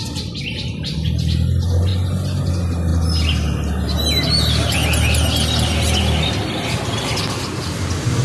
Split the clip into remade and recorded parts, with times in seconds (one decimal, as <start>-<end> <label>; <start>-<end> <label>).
0.0-8.2 recorded